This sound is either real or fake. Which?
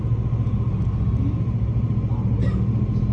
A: real